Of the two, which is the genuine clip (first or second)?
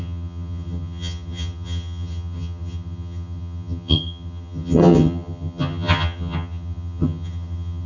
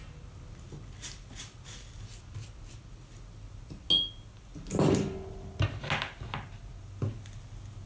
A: second